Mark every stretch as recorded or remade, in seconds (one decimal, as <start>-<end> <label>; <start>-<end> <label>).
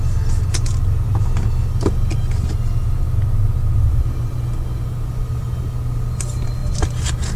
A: 0.0-7.4 recorded